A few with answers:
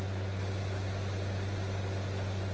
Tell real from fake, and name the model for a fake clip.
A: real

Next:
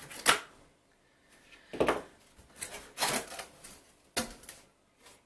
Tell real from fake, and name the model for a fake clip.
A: real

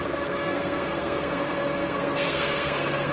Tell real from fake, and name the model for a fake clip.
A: fake, codec, SNAC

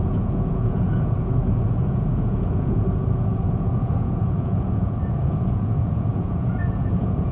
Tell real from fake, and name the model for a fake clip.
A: fake, vocoder, Vocos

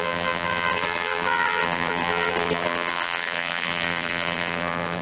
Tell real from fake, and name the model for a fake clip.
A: fake, vocoder, BigVGAN v2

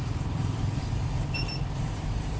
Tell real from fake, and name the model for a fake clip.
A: fake, vocoder, BigVGAN v2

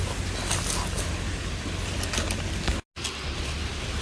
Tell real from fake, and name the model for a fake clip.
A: real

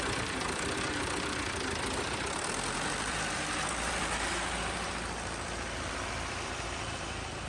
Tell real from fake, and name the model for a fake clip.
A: fake, vocoder, BigVGAN v2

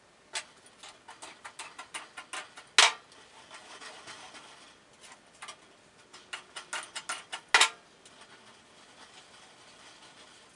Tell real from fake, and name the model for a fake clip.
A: real